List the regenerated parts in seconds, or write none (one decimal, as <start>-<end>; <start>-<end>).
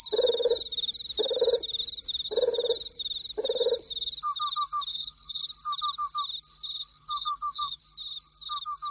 4.9-5.4; 6.9-7.8